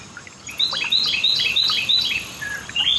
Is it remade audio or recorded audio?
recorded